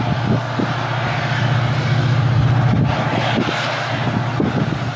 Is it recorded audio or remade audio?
recorded